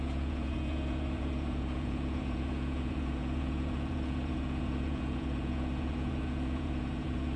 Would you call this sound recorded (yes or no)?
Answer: no